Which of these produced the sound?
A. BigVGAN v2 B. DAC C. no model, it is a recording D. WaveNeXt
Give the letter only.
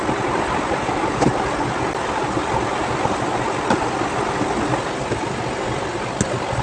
C